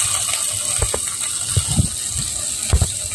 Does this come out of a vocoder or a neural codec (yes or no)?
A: no